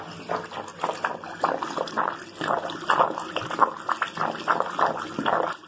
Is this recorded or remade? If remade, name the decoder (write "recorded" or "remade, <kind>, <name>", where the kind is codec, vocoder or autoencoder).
recorded